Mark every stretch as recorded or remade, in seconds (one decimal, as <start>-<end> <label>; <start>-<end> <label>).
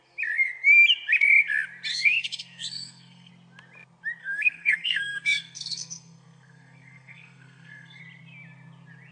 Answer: 0.0-1.9 recorded; 1.9-3.3 remade; 3.3-4.2 recorded; 4.2-8.0 remade; 8.0-9.1 recorded